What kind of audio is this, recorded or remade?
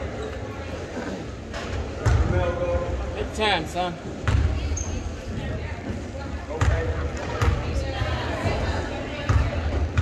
recorded